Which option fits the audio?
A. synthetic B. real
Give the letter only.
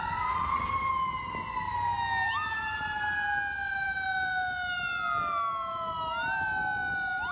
B